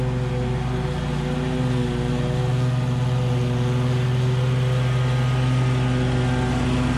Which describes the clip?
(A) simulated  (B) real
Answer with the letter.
B